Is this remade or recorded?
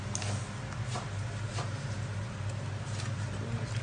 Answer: recorded